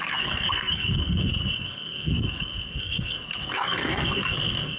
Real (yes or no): no